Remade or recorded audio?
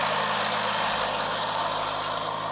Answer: recorded